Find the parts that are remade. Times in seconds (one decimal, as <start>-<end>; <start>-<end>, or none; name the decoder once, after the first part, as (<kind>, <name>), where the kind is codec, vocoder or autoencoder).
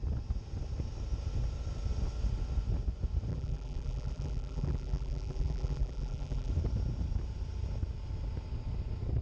3.3-6.5 (vocoder, BigVGAN v2)